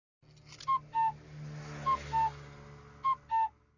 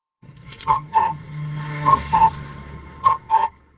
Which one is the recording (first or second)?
first